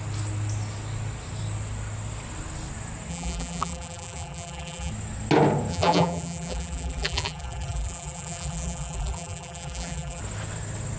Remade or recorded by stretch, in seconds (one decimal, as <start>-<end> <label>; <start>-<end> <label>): 0.0-3.1 recorded; 3.1-4.9 remade; 4.9-5.7 recorded; 5.7-10.2 remade; 10.2-11.0 recorded